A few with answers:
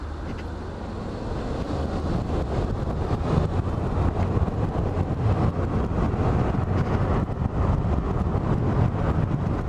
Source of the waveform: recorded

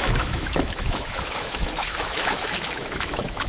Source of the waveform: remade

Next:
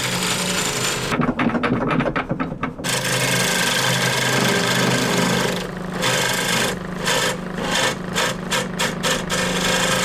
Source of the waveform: recorded